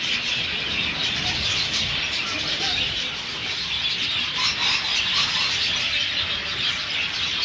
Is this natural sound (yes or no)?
yes